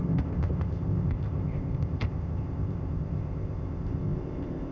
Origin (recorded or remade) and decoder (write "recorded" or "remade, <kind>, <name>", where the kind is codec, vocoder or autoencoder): remade, codec, ZipCodec